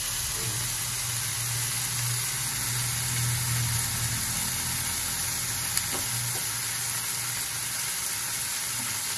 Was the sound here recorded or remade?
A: recorded